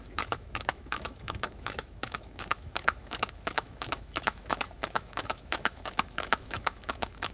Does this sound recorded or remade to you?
remade